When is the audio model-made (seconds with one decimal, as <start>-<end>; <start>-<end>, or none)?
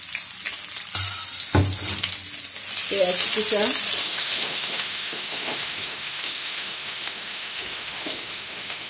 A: 4.0-8.9